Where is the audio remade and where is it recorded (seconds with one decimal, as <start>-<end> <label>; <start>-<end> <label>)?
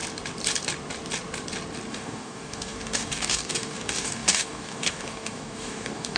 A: 0.0-1.9 recorded; 1.9-6.2 remade